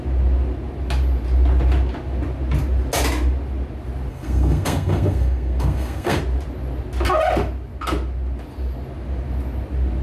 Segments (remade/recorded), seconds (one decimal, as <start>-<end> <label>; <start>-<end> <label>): 0.0-4.1 recorded; 4.1-6.2 remade; 6.2-10.0 recorded